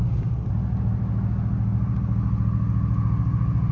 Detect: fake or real real